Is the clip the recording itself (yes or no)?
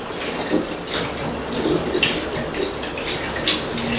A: yes